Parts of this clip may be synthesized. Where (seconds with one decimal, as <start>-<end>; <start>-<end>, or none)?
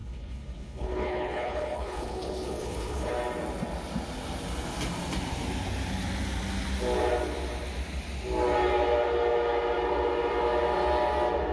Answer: 0.0-3.1